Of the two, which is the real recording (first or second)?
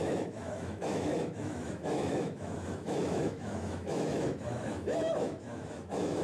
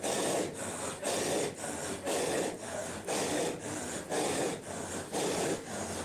second